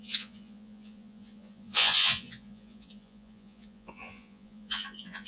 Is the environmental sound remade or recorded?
remade